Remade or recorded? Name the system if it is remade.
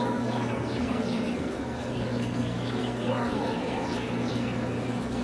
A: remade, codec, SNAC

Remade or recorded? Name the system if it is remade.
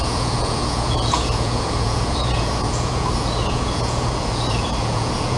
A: remade, vocoder, Vocos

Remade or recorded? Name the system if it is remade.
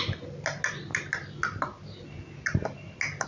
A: recorded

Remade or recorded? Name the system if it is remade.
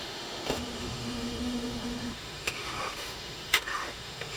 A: remade, autoencoder, DAC-VAE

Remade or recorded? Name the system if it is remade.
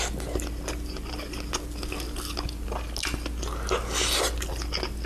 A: recorded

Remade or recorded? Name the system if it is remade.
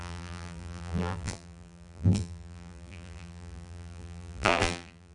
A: remade, vocoder, BigVGAN v2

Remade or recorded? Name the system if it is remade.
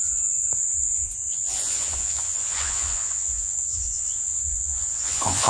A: remade, vocoder, Vocos